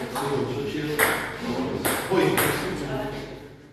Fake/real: real